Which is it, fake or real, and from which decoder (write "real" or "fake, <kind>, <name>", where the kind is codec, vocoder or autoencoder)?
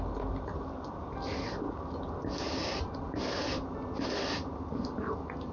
real